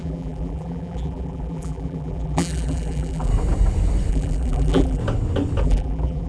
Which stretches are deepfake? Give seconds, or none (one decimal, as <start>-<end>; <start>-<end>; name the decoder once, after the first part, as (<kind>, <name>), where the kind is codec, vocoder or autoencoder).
0.0-3.3 (vocoder, BigVGAN v2); 4.1-5.0; 5.6-6.3